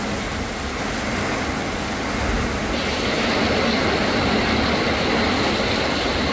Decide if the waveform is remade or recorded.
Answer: recorded